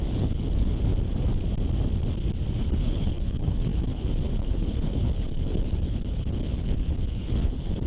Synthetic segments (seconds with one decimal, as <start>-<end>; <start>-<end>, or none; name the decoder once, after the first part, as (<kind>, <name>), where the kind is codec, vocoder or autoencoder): 0.0-0.9 (codec, HILCodec); 2.6-7.9